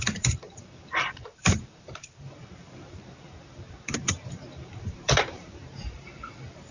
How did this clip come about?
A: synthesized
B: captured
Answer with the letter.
A